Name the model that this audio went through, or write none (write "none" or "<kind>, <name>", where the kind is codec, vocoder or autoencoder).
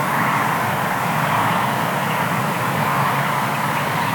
codec, DAC